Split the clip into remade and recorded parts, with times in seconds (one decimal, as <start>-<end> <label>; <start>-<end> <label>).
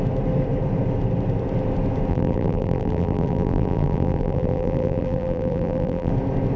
0.0-2.1 recorded; 2.1-6.1 remade; 6.1-6.6 recorded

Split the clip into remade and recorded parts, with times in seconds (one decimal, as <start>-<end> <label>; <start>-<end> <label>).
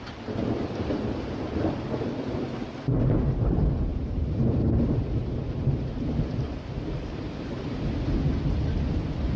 0.0-3.9 recorded; 3.9-7.6 remade; 7.6-9.4 recorded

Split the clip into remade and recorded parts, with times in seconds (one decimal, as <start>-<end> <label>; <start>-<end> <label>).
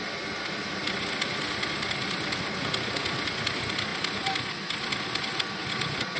0.0-6.2 recorded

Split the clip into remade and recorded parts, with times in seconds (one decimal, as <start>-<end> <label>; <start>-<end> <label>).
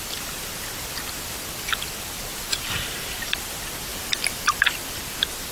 0.0-2.3 recorded; 2.3-3.3 remade; 3.3-3.9 recorded; 3.9-4.5 remade; 4.5-5.5 recorded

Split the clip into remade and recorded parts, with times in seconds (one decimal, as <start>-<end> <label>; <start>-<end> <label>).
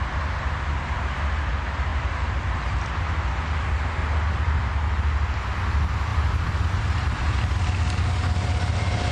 0.0-1.9 recorded; 1.9-2.9 remade; 2.9-4.0 recorded; 4.0-4.7 remade; 4.7-6.1 recorded; 6.1-7.2 remade; 7.2-9.1 recorded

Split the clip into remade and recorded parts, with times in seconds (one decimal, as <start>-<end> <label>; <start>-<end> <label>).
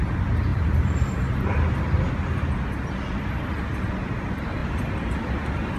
0.0-0.5 recorded; 0.5-2.1 remade; 2.1-5.8 recorded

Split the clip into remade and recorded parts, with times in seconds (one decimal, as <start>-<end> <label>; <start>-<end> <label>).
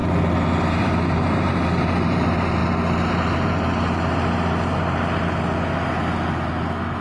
0.0-0.6 recorded; 0.6-2.6 remade; 2.6-3.1 recorded; 3.1-3.7 remade; 3.7-7.0 recorded